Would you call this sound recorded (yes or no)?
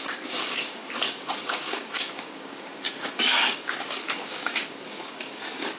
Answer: no